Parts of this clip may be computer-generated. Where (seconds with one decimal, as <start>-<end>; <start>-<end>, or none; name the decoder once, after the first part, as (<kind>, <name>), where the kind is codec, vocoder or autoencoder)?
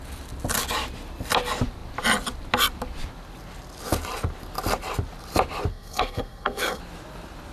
5.7-6.8 (codec, SNAC)